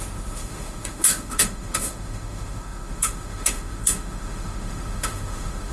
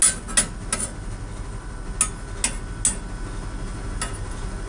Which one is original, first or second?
second